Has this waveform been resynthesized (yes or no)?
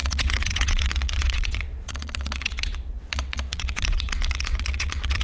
yes